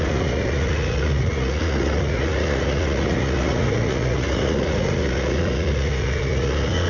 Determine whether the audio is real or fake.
fake